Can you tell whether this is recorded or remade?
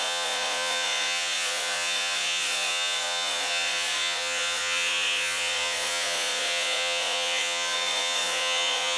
remade